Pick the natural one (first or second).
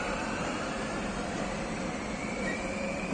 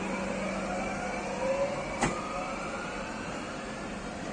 second